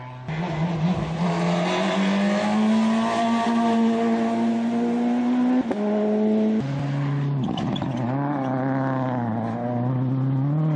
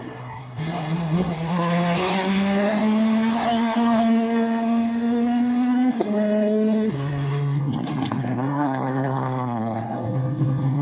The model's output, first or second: second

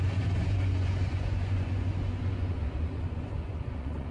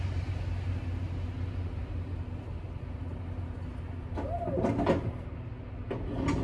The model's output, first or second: first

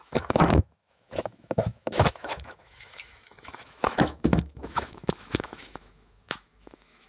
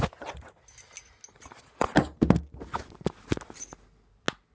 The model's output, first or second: first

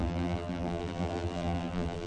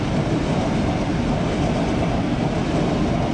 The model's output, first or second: first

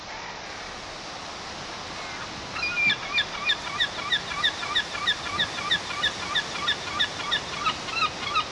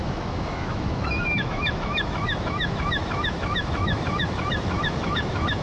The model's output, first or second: second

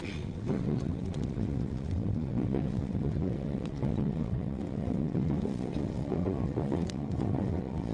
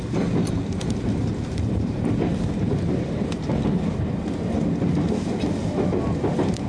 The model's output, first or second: first